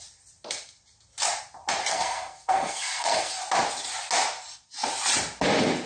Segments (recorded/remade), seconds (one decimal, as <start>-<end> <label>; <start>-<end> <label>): 0.0-1.9 recorded; 1.9-3.4 remade; 3.4-5.9 recorded